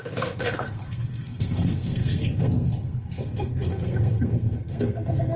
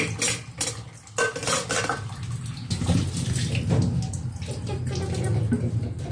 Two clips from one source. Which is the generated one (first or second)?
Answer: first